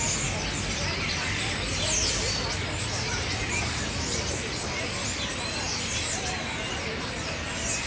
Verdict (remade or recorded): recorded